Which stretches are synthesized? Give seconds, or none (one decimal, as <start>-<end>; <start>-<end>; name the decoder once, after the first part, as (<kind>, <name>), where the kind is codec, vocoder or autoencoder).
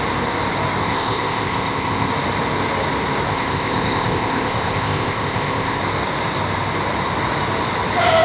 0.8-2.1 (codec, ZipCodec); 3.3-5.8